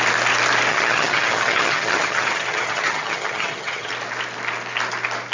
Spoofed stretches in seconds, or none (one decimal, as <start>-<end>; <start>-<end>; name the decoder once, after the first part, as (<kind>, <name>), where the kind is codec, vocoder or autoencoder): 0.7-3.9 (vocoder, HiFi-GAN)

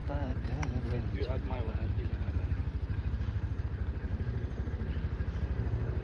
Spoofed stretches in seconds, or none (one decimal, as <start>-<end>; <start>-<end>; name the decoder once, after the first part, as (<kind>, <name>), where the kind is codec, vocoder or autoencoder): 0.0-3.6 (vocoder, BigVGAN v2); 4.1-4.7

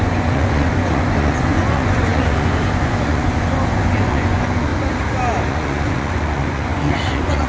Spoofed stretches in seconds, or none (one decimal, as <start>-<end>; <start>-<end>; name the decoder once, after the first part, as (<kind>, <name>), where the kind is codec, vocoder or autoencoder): 0.0-4.7 (vocoder, Vocos); 5.5-7.5

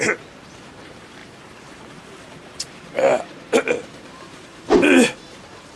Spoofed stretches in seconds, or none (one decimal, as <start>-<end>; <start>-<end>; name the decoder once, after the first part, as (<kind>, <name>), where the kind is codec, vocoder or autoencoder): 0.0-5.8 (vocoder, BigVGAN v2)